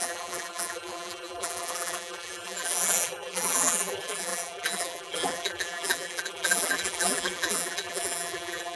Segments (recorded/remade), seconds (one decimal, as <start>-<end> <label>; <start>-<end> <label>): 0.0-8.8 remade